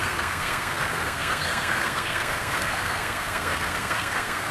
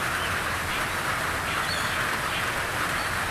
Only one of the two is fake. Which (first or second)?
first